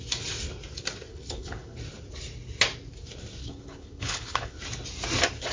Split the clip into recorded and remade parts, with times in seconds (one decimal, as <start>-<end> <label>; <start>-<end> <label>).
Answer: 0.0-1.1 recorded; 1.1-1.8 remade; 1.8-3.4 recorded; 3.4-4.6 remade; 4.6-5.5 recorded